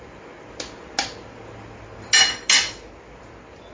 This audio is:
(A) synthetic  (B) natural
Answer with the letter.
B